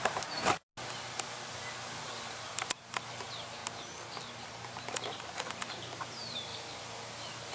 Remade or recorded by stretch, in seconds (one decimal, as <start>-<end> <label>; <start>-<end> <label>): 0.0-0.7 remade; 0.7-2.5 recorded; 2.5-3.6 remade; 3.6-4.2 recorded; 4.2-6.5 remade; 6.5-7.5 recorded